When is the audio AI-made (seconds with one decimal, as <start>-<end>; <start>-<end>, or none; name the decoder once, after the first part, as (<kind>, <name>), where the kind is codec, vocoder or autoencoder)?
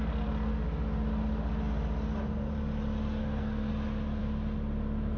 3.2-3.7 (codec, SNAC)